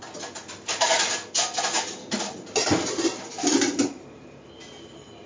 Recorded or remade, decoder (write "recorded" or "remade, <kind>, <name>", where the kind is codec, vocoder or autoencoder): recorded